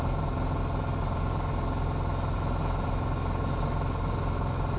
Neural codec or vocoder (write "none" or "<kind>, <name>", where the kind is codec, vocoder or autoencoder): none